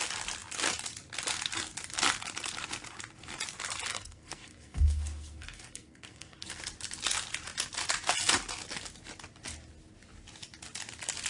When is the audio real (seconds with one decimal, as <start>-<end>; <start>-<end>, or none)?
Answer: 0.0-3.9; 6.6-11.3